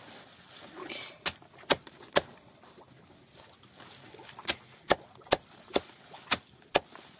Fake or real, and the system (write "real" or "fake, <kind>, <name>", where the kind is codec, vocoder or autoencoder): real